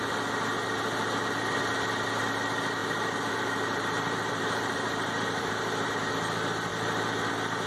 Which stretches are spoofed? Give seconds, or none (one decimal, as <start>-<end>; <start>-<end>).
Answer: 0.5-1.4; 2.8-6.1; 6.7-7.3